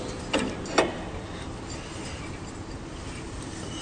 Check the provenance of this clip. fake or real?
real